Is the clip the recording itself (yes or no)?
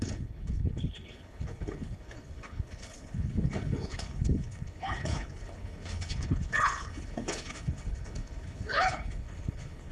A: no